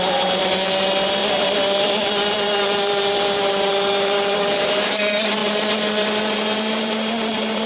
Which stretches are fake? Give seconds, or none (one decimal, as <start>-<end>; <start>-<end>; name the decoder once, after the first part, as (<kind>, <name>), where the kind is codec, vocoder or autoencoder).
0.0-7.7 (vocoder, BigVGAN v2)